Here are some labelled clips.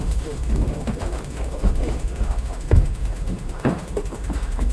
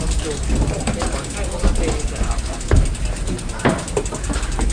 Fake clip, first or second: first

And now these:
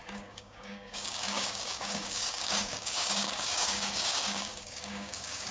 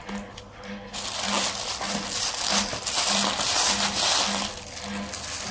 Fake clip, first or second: first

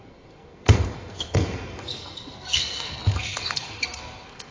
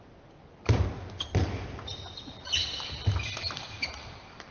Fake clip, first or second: first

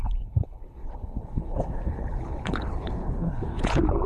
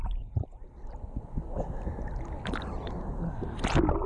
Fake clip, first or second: first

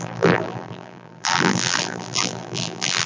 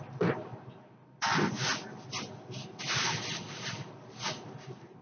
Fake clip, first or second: first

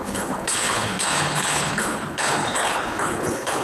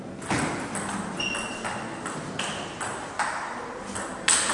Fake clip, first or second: first